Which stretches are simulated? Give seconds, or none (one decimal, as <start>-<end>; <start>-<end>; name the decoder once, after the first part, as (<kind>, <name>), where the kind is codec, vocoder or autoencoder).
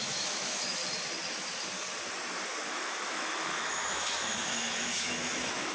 0.0-0.8 (autoencoder, DAC-VAE); 2.7-5.7